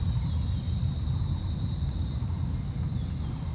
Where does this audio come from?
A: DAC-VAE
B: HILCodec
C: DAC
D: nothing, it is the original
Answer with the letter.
D